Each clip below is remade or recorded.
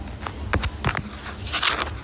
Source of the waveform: recorded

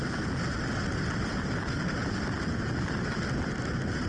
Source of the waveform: recorded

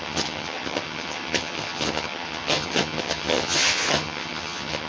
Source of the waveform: remade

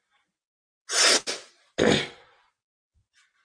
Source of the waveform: recorded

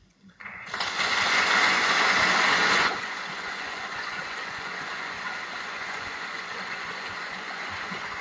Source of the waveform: remade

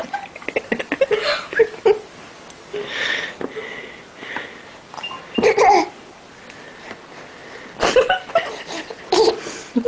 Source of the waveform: recorded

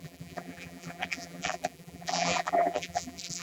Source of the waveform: remade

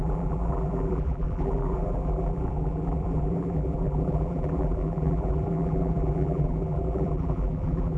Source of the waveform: remade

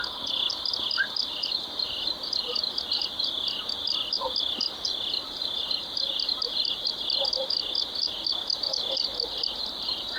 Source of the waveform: recorded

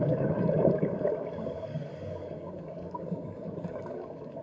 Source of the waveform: remade